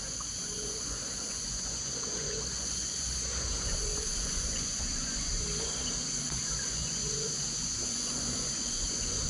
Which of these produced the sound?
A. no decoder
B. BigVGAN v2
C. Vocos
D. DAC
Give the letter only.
C